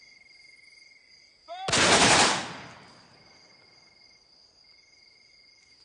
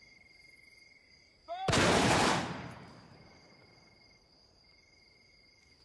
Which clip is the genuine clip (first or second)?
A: first